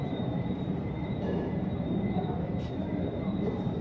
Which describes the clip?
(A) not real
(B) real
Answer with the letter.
A